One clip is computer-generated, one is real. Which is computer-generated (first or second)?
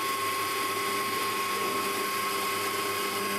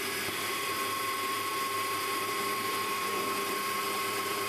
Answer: second